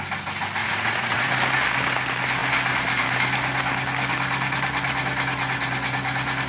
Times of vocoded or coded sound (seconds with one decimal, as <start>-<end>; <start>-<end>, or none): 0.6-1.3